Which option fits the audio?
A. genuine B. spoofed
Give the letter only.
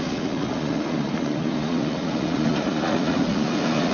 B